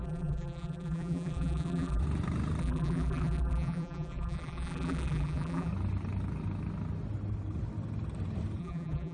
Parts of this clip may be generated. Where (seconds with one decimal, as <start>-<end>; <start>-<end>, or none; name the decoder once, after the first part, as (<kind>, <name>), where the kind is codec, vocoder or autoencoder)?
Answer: 0.0-2.0 (vocoder, BigVGAN v2); 2.6-5.7; 8.6-9.1

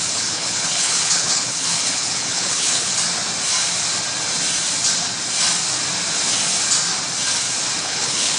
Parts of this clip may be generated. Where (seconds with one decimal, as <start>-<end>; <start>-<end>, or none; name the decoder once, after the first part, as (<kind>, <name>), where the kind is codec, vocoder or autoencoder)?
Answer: 0.0-2.9 (codec, HILCodec); 7.8-8.4

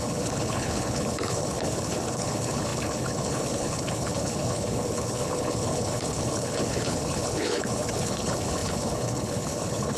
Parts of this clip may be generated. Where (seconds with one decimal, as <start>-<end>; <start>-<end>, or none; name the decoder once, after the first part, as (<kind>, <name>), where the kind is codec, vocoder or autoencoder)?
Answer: 0.0-10.0 (codec, HILCodec)

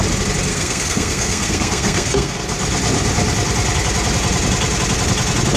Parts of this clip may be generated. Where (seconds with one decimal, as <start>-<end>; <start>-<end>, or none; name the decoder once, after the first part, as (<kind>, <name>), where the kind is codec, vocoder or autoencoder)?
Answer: 0.5-2.4 (codec, SNAC)

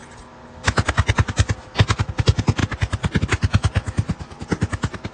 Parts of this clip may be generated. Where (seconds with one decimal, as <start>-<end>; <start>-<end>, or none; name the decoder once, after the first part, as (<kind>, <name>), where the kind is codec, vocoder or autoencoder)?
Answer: none

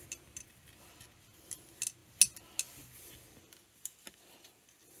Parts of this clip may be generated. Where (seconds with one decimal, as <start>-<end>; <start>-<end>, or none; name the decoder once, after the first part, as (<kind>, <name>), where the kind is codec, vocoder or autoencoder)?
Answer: none